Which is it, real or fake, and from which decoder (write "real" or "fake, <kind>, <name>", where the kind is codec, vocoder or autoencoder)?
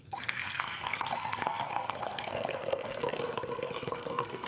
fake, codec, SNAC